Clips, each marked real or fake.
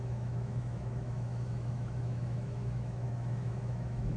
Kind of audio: fake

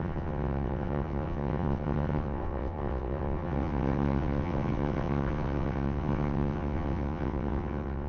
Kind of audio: fake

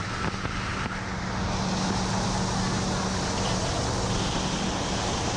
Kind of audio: real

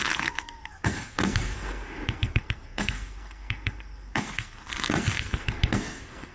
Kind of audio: fake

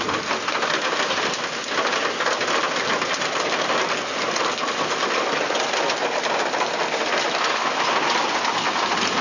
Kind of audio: real